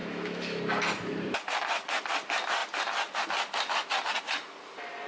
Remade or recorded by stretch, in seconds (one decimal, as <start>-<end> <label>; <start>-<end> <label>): 0.0-0.6 remade; 0.6-5.1 recorded